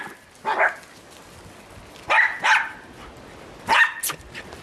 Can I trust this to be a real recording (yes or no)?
yes